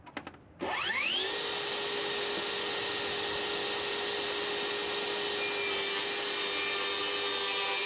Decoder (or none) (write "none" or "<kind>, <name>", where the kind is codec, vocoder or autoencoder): none